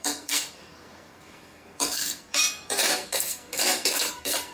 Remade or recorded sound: remade